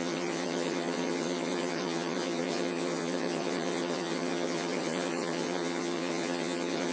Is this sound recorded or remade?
remade